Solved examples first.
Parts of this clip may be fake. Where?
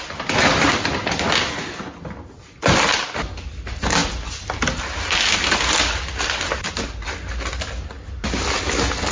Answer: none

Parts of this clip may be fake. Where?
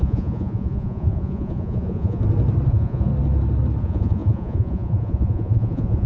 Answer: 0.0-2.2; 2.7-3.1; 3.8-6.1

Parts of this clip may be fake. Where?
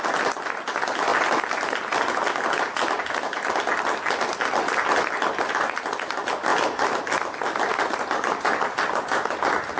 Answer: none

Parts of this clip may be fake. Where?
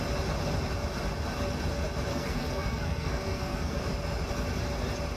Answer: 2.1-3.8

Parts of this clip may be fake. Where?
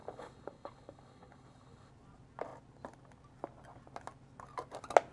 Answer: 0.0-1.9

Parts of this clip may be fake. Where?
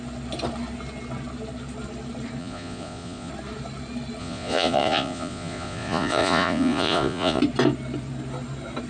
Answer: 2.4-3.3; 4.2-7.4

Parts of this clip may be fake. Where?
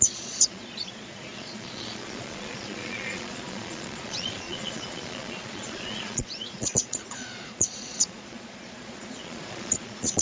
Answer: 0.0-10.2